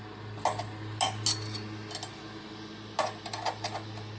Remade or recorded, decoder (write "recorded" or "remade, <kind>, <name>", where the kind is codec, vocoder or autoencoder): recorded